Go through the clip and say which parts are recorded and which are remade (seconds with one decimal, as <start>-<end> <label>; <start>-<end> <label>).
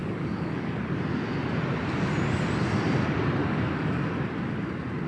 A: 0.0-0.8 remade; 0.8-3.4 recorded; 3.4-4.1 remade; 4.1-5.1 recorded